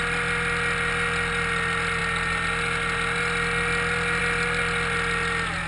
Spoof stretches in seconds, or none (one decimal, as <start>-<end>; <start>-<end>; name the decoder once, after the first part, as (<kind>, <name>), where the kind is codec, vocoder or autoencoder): none